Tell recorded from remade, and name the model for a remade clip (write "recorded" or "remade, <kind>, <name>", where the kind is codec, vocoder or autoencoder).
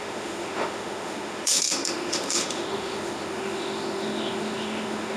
remade, autoencoder, DAC-VAE